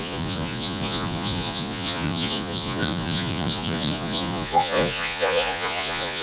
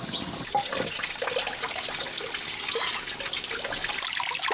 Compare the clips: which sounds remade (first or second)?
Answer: first